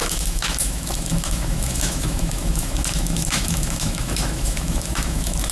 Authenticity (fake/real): fake